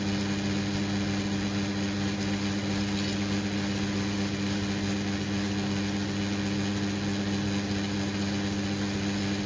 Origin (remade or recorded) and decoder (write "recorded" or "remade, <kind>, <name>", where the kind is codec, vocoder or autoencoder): recorded